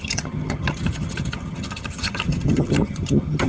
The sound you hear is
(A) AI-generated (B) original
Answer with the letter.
A